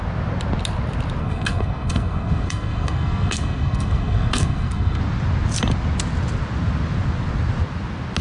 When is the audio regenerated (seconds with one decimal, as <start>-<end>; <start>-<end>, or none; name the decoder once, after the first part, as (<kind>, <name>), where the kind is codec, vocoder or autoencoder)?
1.2-5.0 (codec, SNAC)